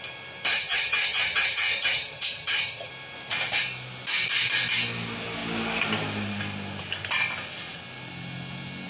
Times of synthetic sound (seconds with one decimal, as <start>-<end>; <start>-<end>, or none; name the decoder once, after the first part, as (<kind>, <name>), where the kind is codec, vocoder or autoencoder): 0.5-2.9 (vocoder, HiFi-GAN)